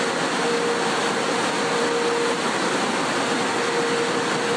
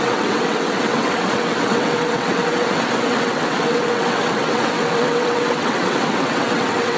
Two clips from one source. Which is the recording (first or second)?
first